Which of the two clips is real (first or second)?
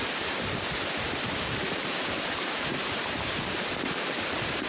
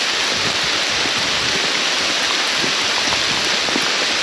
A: second